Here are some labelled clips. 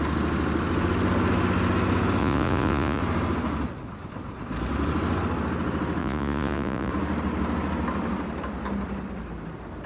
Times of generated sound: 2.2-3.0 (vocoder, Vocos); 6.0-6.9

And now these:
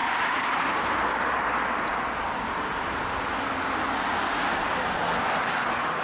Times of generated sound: 0.0-1.4 (vocoder, BigVGAN v2)

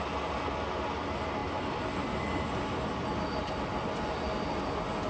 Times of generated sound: 1.4-3.4 (vocoder, BigVGAN v2)

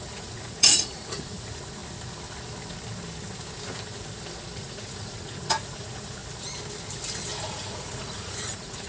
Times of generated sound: 0.0-1.8 (vocoder, Vocos); 4.6-6.2; 7.5-8.9

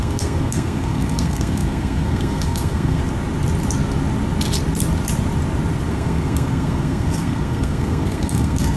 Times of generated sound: 0.0-3.0 (codec, SNAC); 5.9-8.8

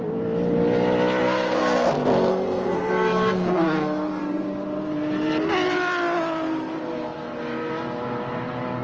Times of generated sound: 1.2-4.2 (codec, SNAC)